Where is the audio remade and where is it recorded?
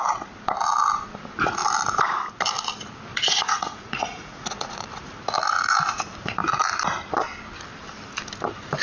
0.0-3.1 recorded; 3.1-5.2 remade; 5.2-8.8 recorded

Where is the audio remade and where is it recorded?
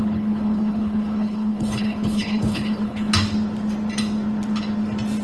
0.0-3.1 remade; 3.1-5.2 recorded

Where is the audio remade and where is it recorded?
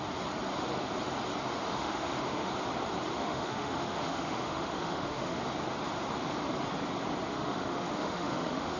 0.0-1.7 recorded; 1.7-2.5 remade; 2.5-3.1 recorded; 3.1-5.4 remade; 5.4-7.3 recorded; 7.3-8.8 remade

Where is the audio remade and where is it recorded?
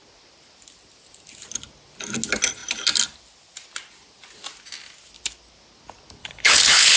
0.0-6.2 recorded; 6.2-7.0 remade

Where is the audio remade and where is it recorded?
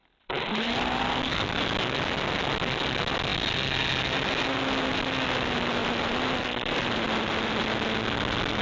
0.0-1.3 remade; 1.3-5.8 recorded; 5.8-7.3 remade; 7.3-8.6 recorded